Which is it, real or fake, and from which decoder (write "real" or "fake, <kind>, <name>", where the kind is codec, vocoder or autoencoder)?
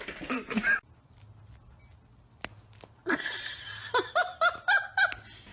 real